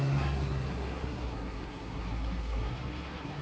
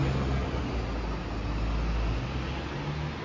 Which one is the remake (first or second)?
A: first